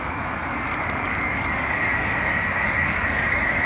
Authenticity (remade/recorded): remade